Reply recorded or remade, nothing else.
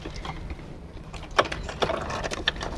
recorded